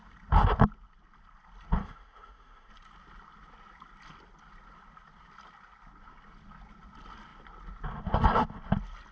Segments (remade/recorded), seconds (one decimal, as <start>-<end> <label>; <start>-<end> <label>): 0.0-1.8 recorded; 1.8-2.7 remade; 2.7-9.1 recorded